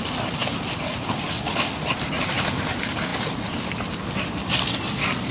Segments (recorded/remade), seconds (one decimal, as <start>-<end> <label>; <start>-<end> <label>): 0.0-5.3 recorded